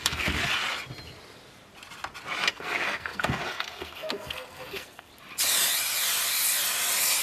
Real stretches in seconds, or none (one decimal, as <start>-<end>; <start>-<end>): 0.4-2.5; 5.1-7.2